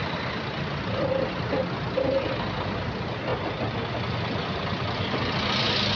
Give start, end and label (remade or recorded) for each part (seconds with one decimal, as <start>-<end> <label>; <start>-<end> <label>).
0.0-6.0 recorded